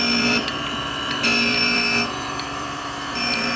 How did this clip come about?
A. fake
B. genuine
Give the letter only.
A